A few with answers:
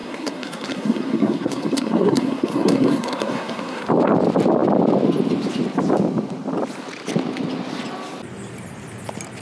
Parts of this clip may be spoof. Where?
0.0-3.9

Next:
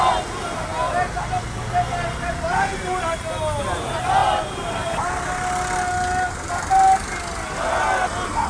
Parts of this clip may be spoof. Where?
none

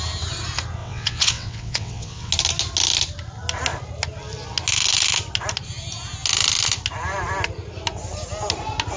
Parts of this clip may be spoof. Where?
0.8-2.3

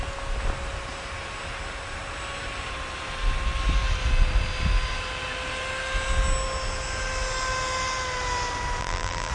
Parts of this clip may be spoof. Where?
8.8-9.3

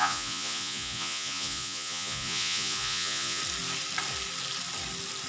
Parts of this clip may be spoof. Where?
0.0-3.4

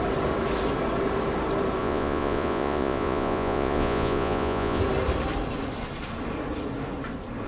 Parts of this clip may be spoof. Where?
1.8-4.8

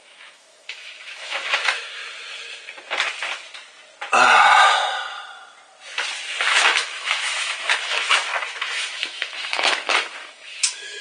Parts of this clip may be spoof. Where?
0.0-2.0; 6.4-11.0

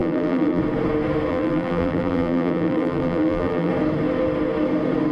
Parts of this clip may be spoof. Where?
0.0-0.6; 1.3-3.7